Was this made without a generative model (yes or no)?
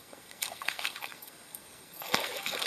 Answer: no